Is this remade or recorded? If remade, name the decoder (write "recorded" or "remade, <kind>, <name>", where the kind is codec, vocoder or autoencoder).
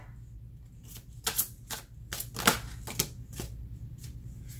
recorded